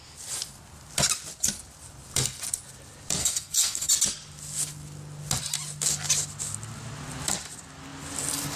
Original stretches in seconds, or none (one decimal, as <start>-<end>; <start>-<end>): 0.0-3.2; 3.9-8.6